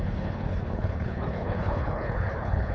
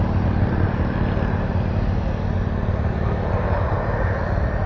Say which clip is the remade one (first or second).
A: first